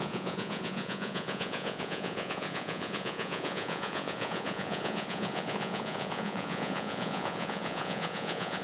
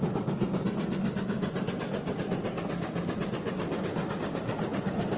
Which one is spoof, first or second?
first